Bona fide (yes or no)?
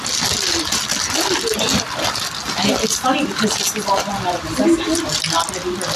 yes